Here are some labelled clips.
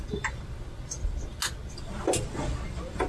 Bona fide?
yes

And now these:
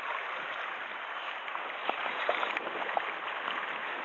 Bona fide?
yes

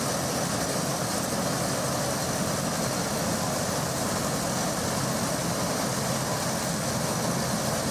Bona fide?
yes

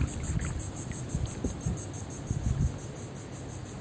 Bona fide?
yes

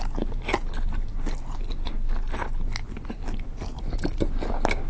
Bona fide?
yes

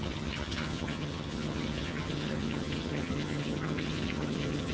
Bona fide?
no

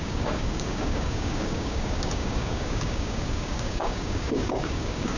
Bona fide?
no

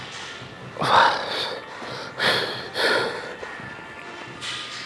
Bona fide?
yes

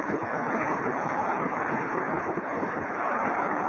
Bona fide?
no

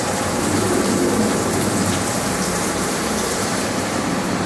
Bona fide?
no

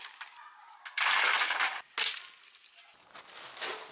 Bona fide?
yes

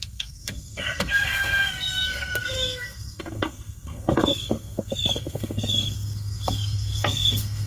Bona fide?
no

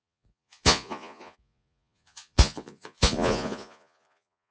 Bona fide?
no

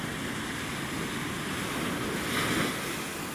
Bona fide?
yes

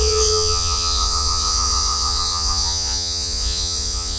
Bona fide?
no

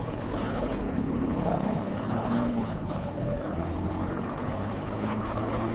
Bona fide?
no